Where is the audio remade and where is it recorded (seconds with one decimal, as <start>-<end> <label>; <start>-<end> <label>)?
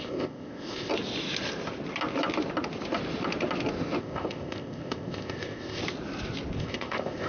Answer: 0.0-0.9 remade; 0.9-4.0 recorded; 4.0-5.8 remade; 5.8-6.6 recorded; 6.6-7.3 remade